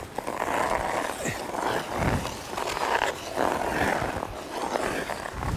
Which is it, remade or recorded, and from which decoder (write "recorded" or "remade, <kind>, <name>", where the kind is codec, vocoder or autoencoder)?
recorded